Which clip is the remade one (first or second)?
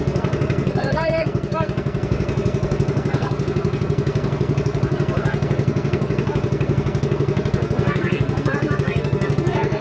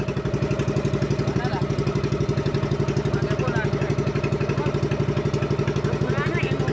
first